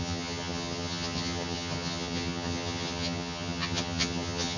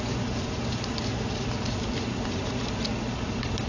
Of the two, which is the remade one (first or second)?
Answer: first